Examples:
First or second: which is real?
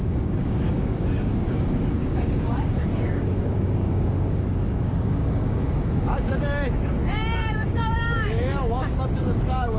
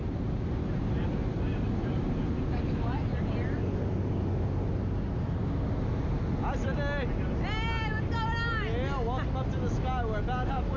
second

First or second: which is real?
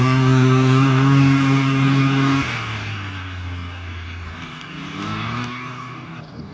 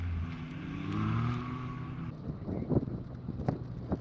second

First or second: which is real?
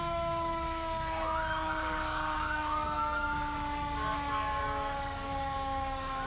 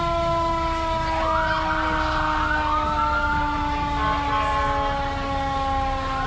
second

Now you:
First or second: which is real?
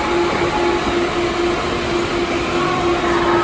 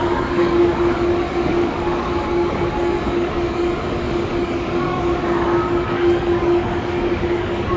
first